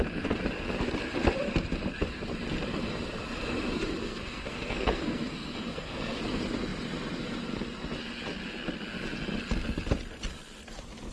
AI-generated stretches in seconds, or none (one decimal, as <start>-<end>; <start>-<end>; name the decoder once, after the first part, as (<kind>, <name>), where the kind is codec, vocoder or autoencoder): 4.0-6.2 (codec, SNAC)